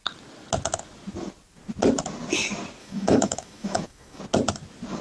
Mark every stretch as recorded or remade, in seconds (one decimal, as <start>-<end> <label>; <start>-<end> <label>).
0.0-2.8 recorded; 2.8-4.2 remade; 4.2-5.0 recorded